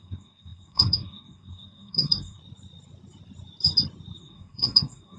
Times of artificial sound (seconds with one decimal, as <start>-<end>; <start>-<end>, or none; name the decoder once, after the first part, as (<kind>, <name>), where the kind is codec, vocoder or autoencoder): 0.0-2.4 (codec, SNAC); 4.2-5.2